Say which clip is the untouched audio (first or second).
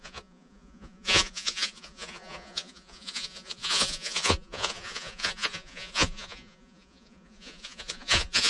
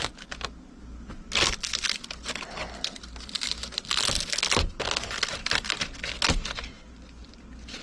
second